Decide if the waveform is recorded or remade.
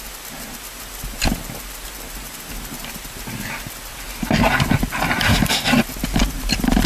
recorded